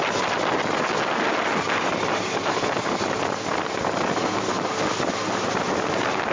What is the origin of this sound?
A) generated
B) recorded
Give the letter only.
B